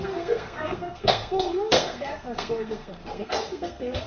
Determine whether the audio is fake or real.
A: fake